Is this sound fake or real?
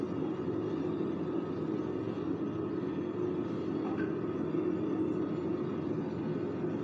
real